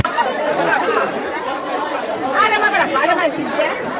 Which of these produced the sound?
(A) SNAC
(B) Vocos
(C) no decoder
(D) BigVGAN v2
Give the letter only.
B